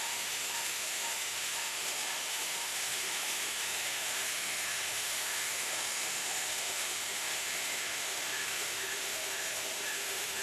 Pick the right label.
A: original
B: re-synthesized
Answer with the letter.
B